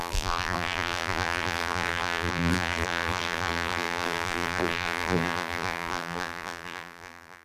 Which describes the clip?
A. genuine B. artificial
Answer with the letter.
B